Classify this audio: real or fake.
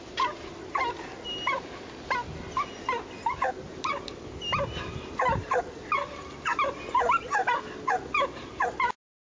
real